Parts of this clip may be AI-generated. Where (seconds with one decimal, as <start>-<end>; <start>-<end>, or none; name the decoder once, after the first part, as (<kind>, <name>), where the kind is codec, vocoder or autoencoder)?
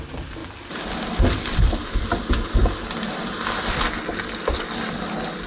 none